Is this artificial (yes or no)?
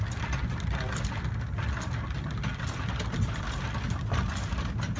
no